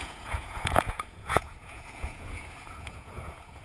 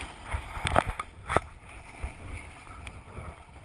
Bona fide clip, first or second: second